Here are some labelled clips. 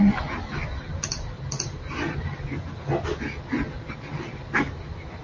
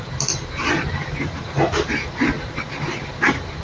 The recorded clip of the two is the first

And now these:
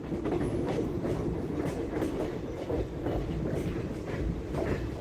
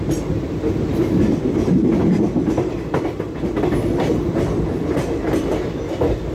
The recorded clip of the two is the second